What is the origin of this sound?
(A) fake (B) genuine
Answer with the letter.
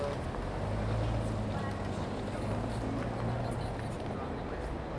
B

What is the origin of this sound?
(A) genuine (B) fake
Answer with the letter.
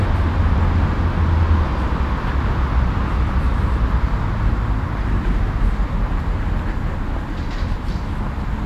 A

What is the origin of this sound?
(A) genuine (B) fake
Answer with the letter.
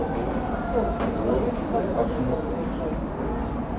A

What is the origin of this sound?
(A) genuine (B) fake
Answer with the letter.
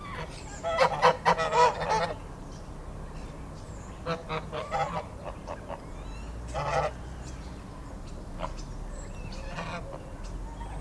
A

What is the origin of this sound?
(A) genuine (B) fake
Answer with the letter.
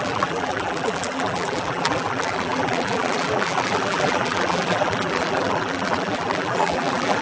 B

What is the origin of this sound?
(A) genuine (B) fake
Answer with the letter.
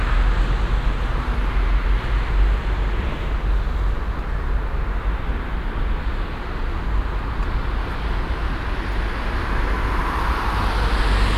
A